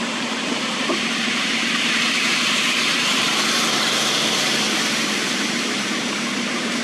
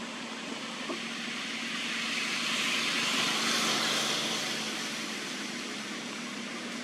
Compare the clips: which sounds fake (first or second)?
first